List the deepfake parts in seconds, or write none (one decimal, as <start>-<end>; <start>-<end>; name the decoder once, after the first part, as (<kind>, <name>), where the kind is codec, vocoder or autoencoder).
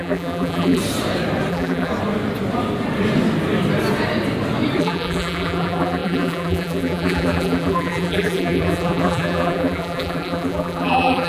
0.0-0.8 (vocoder, BigVGAN v2); 1.5-1.9; 4.8-11.3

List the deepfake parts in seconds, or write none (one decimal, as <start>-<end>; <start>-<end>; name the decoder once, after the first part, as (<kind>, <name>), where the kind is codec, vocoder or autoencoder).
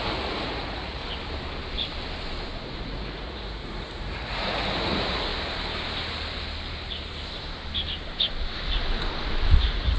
0.0-1.0 (vocoder, Vocos); 2.5-5.3; 9.6-10.0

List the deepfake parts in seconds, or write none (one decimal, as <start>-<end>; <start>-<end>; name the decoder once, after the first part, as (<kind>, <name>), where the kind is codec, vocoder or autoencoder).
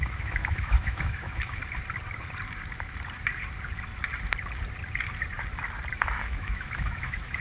0.0-1.6 (autoencoder, DAC-VAE); 6.0-7.4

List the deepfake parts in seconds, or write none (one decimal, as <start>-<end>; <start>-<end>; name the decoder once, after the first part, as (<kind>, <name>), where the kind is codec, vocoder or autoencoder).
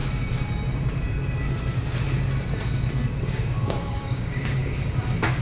3.2-5.4 (codec, DAC)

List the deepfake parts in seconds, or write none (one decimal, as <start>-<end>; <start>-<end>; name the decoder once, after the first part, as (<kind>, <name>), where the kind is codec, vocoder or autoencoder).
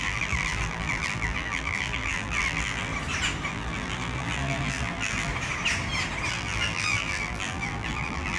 0.0-2.9 (vocoder, BigVGAN v2); 3.5-5.3; 6.3-8.4